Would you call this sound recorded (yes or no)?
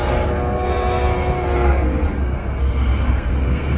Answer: no